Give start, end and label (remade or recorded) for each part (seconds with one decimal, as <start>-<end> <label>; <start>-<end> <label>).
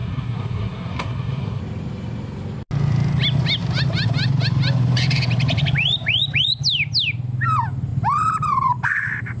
0.0-1.6 remade; 1.6-9.4 recorded